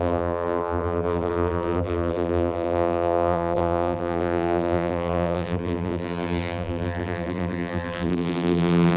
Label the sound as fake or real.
fake